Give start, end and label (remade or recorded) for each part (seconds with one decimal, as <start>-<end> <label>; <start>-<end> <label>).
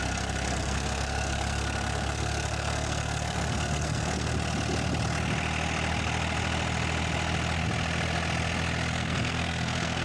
0.0-4.3 remade; 4.3-8.9 recorded; 8.9-10.0 remade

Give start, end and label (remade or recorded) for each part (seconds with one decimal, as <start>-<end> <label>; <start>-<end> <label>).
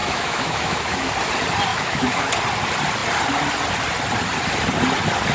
0.0-1.1 remade; 1.1-1.7 recorded; 1.7-2.3 remade; 2.3-5.3 recorded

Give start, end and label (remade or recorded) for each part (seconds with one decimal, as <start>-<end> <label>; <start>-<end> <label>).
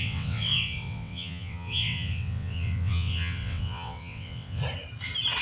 0.0-4.6 remade; 4.6-5.4 recorded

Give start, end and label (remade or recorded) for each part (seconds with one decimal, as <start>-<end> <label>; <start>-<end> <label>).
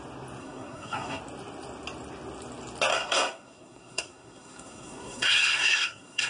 0.0-0.4 recorded; 0.4-1.2 remade; 1.2-2.9 recorded; 2.9-6.3 remade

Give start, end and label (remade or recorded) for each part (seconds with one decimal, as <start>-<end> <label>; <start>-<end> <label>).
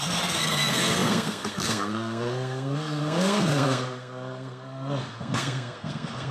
0.0-6.3 remade